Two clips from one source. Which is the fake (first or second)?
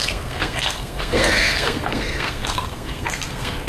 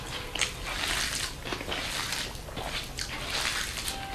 first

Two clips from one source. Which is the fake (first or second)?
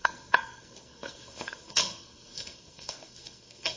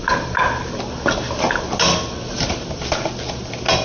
first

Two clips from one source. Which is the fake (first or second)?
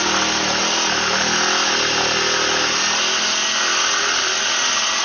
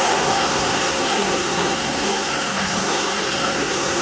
second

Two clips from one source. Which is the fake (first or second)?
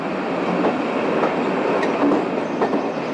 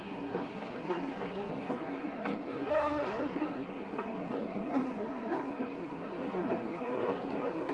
second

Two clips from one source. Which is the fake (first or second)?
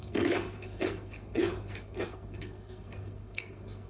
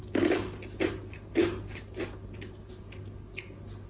first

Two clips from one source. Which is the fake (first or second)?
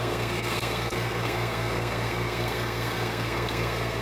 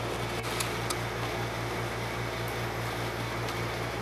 first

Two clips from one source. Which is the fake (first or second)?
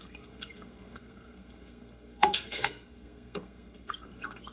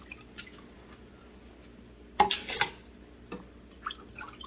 first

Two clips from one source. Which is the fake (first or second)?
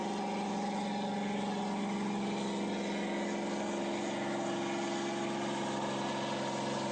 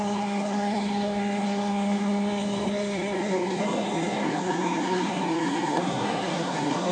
second